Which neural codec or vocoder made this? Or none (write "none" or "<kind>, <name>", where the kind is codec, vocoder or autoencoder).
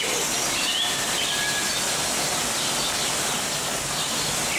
none